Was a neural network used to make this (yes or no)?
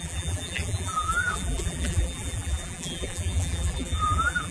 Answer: yes